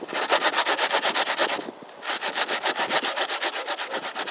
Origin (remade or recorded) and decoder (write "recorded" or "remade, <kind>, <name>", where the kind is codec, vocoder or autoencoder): recorded